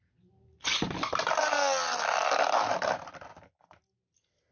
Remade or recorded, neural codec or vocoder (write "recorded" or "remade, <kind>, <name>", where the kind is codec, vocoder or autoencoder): recorded